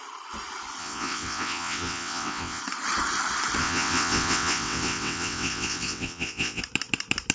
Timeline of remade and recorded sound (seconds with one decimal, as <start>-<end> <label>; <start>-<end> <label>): 0.0-0.8 recorded; 0.8-2.6 remade; 2.6-3.6 recorded; 3.6-6.6 remade; 6.6-7.3 recorded